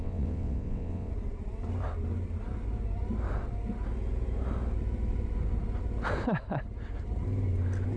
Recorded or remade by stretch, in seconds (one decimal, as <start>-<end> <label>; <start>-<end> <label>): 0.0-1.1 remade; 1.1-8.0 recorded